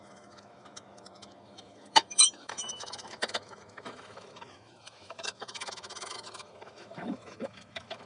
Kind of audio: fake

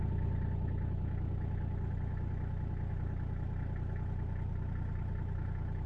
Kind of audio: real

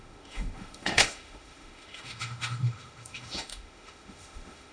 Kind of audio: fake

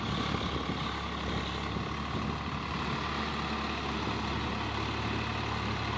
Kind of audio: real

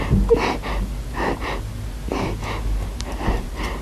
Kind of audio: real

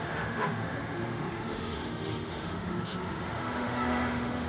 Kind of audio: fake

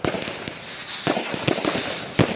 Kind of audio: real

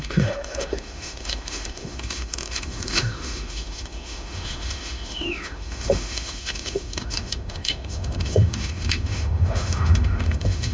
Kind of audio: fake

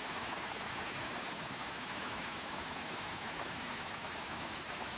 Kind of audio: fake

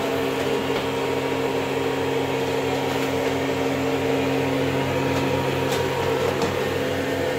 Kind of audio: real